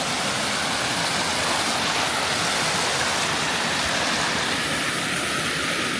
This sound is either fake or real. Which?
real